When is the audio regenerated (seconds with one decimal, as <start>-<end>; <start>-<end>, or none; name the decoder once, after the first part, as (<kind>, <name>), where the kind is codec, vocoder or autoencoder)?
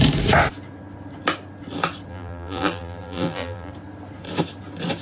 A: 2.1-3.7 (vocoder, BigVGAN v2)